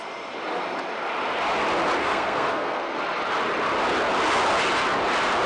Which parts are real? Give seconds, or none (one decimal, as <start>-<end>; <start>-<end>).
0.0-2.0; 2.9-5.5